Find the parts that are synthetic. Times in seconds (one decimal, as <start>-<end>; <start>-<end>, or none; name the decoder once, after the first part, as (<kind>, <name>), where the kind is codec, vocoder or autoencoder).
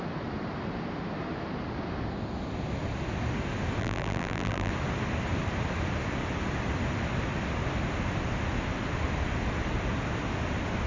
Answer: 3.8-4.7 (vocoder, BigVGAN v2)